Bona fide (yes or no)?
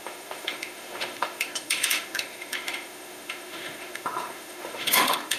no